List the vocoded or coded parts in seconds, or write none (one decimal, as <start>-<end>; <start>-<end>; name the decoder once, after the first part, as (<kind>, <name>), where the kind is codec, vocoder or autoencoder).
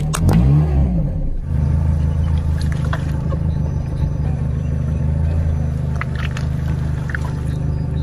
0.8-5.0 (vocoder, BigVGAN v2)